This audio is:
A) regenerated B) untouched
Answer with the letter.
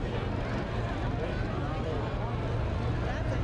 B